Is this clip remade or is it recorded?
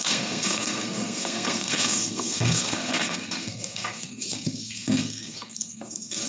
remade